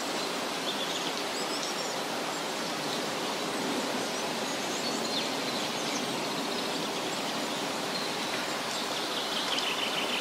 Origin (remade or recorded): recorded